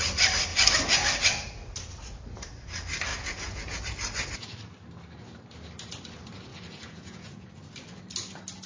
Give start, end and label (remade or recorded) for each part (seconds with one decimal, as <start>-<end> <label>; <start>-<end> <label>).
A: 0.0-3.1 recorded; 3.1-3.8 remade; 3.8-6.5 recorded; 6.5-7.5 remade; 7.5-8.7 recorded

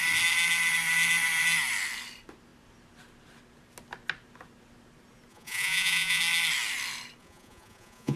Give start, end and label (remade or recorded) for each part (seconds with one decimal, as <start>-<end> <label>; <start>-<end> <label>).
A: 0.0-5.3 recorded; 5.3-6.2 remade; 6.2-7.2 recorded; 7.2-8.2 remade

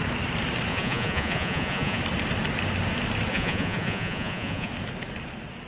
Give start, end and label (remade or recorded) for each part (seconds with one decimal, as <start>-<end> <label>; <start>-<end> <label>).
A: 0.0-0.7 recorded; 0.7-2.0 remade; 2.0-3.3 recorded; 3.3-4.7 remade; 4.7-5.7 recorded